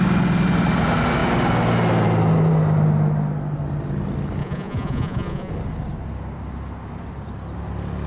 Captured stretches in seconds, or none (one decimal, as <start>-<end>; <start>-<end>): 0.0-4.4; 5.5-8.1